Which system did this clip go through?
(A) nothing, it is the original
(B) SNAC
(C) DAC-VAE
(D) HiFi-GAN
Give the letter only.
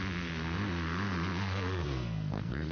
B